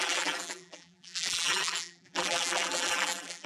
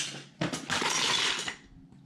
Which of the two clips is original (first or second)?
second